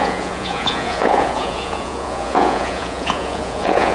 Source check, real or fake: fake